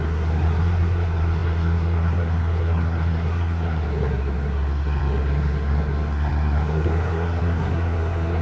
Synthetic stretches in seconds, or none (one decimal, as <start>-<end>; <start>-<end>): 0.0-8.4